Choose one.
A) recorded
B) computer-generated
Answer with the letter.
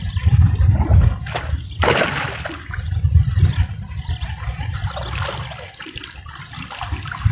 A